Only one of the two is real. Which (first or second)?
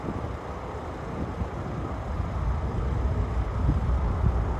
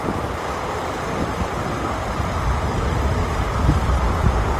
first